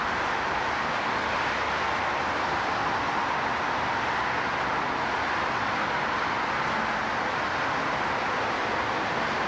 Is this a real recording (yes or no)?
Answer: yes